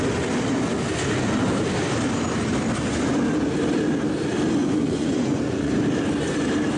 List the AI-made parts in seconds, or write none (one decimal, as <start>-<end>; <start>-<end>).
4.6-5.7